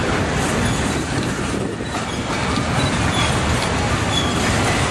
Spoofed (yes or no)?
no